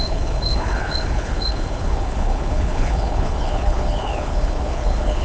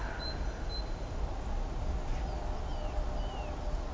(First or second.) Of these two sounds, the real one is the second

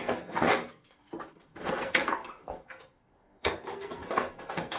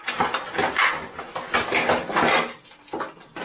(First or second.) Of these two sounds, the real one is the second